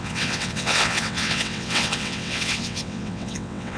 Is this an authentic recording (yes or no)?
no